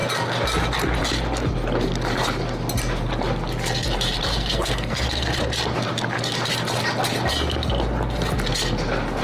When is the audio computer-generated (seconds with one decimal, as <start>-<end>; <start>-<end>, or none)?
4.3-5.4